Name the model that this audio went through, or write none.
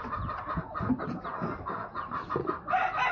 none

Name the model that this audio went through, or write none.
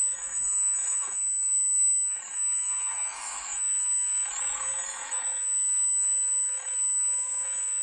autoencoder, DAC-VAE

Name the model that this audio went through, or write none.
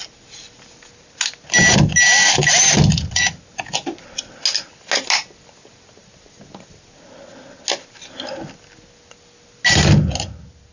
none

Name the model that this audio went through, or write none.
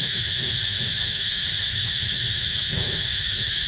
autoencoder, DAC-VAE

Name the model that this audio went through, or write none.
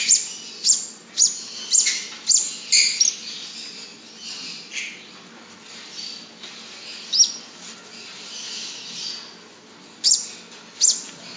none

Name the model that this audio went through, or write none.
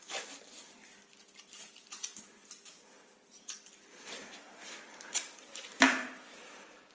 vocoder, BigVGAN v2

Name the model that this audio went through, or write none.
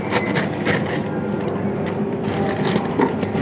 none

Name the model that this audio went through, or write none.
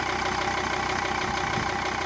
none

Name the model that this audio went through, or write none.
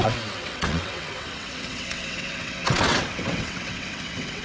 vocoder, WaveNeXt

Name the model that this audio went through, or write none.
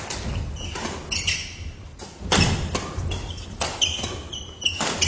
none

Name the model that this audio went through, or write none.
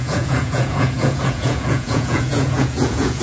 vocoder, Vocos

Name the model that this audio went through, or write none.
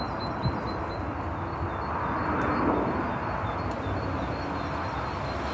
none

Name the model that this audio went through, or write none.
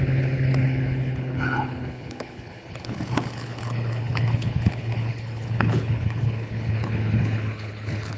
codec, HILCodec